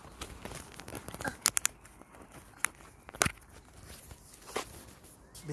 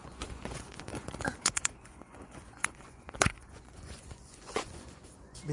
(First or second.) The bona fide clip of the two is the first